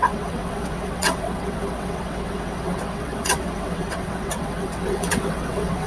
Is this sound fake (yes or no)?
yes